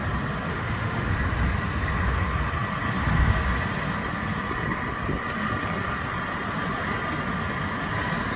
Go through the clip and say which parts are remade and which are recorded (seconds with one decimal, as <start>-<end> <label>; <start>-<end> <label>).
0.0-0.5 recorded; 0.5-1.1 remade; 1.1-8.4 recorded